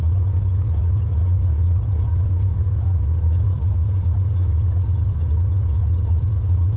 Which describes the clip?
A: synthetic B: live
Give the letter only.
A